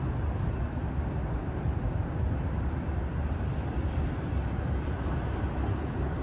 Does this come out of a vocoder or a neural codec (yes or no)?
no